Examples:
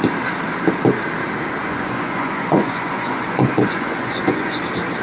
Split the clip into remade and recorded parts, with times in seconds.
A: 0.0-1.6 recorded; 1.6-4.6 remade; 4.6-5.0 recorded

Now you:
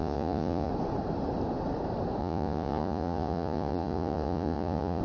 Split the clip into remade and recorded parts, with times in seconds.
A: 0.0-0.7 remade; 0.7-2.2 recorded; 2.2-5.0 remade

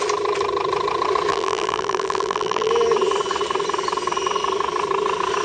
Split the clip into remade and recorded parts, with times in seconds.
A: 0.0-1.3 recorded; 1.3-2.7 remade; 2.7-5.4 recorded

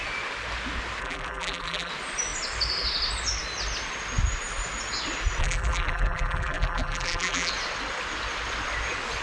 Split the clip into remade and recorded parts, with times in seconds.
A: 0.0-1.0 recorded; 1.0-1.9 remade; 1.9-5.4 recorded; 5.4-7.5 remade; 7.5-9.2 recorded